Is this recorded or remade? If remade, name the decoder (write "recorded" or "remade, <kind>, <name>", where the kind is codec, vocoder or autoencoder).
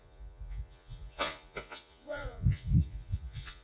remade, vocoder, Vocos